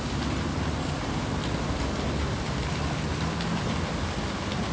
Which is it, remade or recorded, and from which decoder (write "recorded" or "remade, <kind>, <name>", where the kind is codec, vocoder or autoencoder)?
recorded